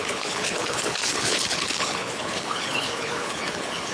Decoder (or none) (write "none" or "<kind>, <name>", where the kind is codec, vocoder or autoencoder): codec, HILCodec